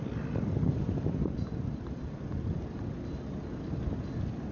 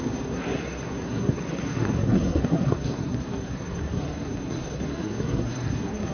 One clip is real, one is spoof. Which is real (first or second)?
first